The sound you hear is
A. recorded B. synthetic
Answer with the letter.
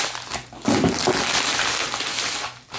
A